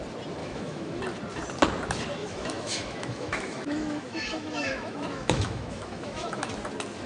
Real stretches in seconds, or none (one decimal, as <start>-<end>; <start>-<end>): 0.0-0.4; 1.0-2.2; 6.5-7.1